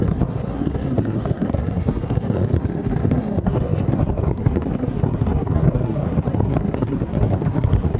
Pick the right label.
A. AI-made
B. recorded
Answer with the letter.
A